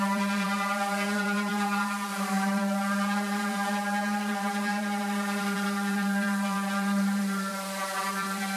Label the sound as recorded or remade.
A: remade